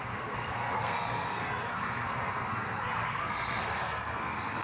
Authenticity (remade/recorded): remade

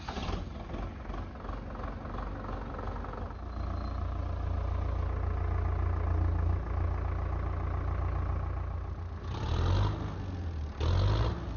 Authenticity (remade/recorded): recorded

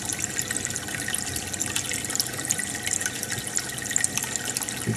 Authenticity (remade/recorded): recorded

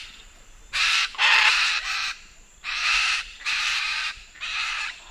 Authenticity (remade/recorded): remade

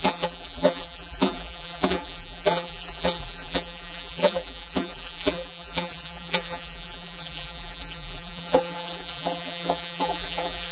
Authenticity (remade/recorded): remade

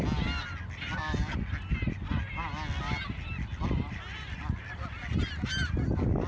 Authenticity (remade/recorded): recorded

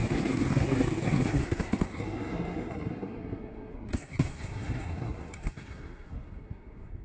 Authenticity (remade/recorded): remade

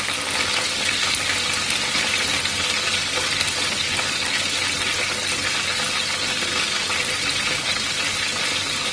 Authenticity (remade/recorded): recorded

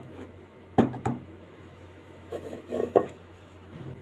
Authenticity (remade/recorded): remade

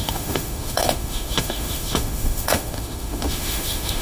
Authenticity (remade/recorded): remade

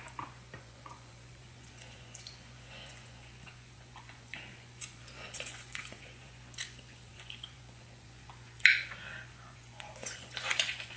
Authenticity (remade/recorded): remade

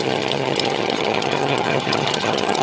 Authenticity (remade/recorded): remade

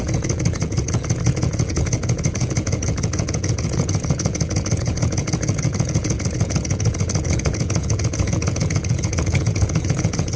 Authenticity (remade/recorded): remade